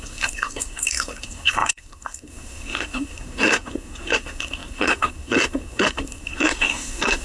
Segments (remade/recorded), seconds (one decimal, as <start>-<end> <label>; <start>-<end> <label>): 0.0-7.2 remade